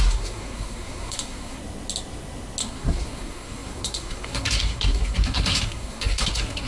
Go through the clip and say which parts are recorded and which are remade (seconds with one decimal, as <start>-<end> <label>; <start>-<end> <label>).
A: 0.0-1.6 remade; 1.6-2.6 recorded; 2.6-6.7 remade